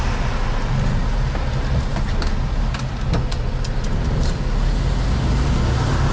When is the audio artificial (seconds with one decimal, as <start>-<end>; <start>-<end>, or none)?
none

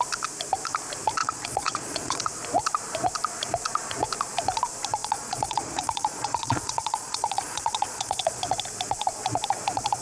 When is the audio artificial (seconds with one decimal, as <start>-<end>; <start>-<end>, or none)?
1.2-2.2; 5.0-8.4